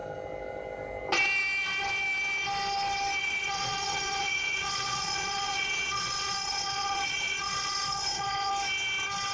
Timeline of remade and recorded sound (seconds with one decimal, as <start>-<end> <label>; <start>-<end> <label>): 0.0-3.2 recorded; 3.2-8.5 remade; 8.5-9.3 recorded